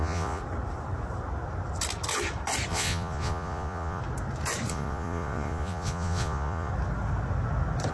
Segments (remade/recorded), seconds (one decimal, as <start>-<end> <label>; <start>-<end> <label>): 0.0-0.4 remade; 0.4-2.7 recorded; 2.7-4.0 remade; 4.0-4.7 recorded; 4.7-6.7 remade; 6.7-7.9 recorded